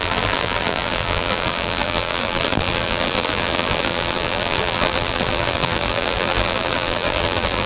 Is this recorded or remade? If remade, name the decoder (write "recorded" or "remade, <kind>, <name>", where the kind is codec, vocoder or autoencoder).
remade, vocoder, BigVGAN v2